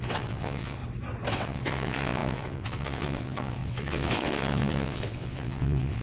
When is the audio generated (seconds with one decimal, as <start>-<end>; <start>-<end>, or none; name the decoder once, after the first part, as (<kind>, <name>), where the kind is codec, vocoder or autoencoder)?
0.0-0.8 (vocoder, WaveNeXt); 1.3-6.0